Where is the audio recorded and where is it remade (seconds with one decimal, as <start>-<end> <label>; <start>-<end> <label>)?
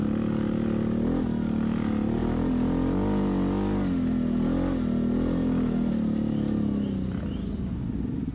0.0-8.3 recorded